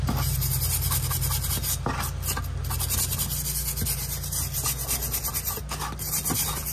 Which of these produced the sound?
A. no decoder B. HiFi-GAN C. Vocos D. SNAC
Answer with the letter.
A